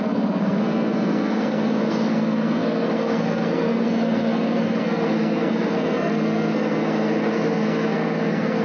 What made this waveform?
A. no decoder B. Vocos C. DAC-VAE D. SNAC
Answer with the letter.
D